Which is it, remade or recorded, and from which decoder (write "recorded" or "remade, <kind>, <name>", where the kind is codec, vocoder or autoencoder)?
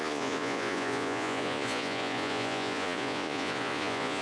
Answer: remade, vocoder, Vocos